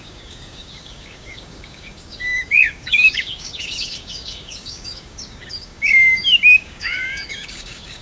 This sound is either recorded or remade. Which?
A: remade